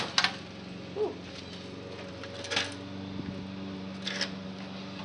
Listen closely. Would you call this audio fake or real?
real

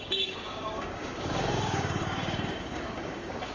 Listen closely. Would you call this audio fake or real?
fake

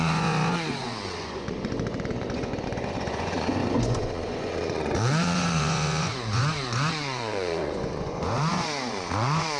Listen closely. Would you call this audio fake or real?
fake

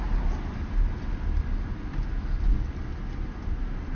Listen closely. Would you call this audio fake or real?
real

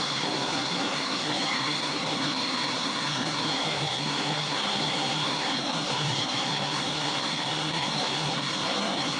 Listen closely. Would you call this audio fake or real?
fake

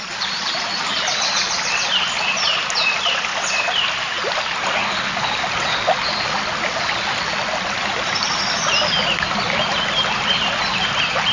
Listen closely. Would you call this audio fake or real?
real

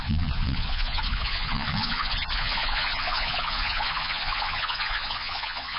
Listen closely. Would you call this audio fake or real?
fake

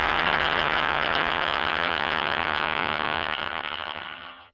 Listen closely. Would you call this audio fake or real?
fake